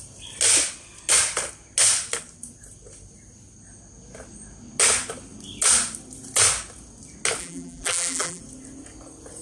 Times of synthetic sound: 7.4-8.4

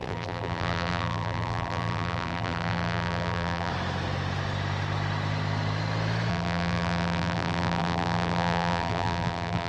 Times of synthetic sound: 0.0-3.7; 6.3-9.7

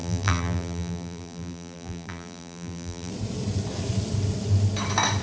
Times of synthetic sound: 0.0-3.1

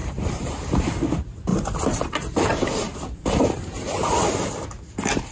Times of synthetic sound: 0.0-0.5

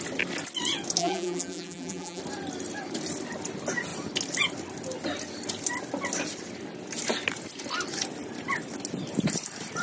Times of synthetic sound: 1.0-2.2

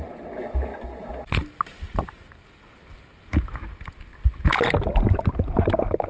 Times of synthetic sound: none

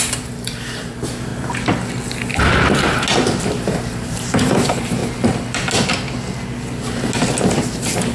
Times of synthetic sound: 0.0-1.3; 3.5-5.0; 7.4-8.1